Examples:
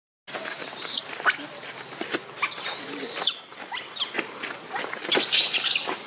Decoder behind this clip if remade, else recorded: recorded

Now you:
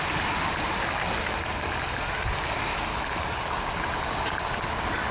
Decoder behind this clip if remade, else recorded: recorded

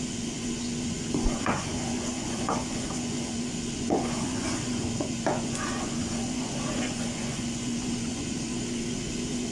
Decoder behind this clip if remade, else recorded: remade, vocoder, Vocos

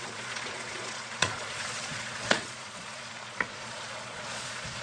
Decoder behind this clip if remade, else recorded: remade, vocoder, Vocos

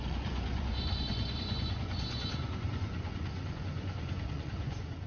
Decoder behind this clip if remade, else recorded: remade, vocoder, Vocos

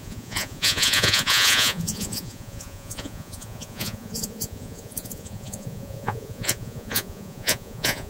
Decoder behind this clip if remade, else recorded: remade, vocoder, Vocos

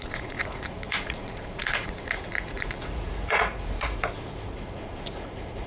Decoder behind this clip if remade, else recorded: remade, vocoder, Vocos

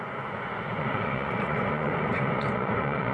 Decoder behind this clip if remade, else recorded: remade, vocoder, Vocos